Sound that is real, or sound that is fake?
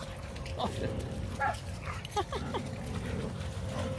real